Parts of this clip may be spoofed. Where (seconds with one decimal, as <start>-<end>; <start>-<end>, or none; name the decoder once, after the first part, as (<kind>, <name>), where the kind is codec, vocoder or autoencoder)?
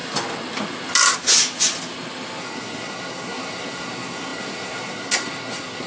2.4-5.9 (codec, SNAC)